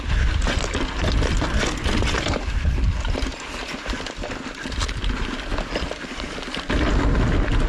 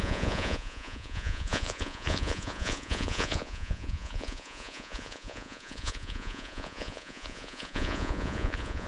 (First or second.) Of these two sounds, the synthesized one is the second